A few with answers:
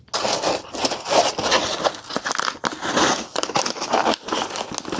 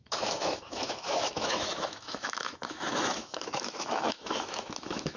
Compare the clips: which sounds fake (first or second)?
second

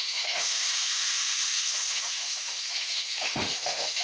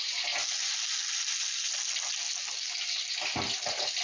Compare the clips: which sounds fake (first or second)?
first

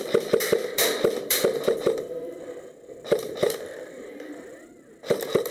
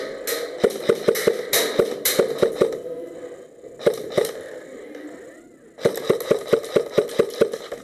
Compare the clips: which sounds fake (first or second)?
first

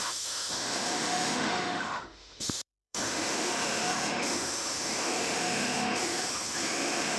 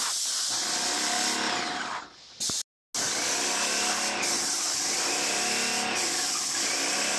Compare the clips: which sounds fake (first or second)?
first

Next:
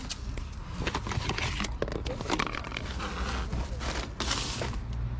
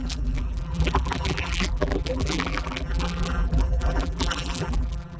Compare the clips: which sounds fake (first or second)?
second